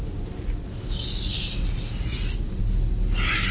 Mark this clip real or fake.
real